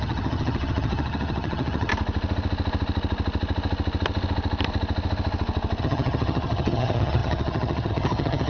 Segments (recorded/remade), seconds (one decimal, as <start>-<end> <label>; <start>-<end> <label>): 0.0-1.9 remade; 1.9-5.8 recorded; 5.8-8.5 remade

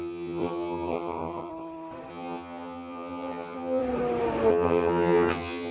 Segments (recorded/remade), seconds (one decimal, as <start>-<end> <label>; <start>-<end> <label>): 0.0-1.5 remade; 1.5-2.1 recorded; 2.1-3.8 remade; 3.8-4.5 recorded; 4.5-5.7 remade